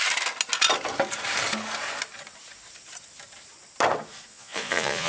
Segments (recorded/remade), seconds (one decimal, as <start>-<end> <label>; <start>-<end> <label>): 0.0-4.3 recorded; 4.3-5.1 remade